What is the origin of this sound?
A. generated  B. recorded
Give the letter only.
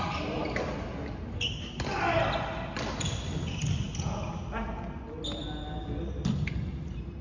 B